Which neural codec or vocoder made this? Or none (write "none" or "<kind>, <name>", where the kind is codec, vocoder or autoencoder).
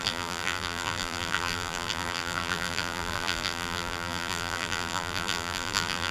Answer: vocoder, BigVGAN v2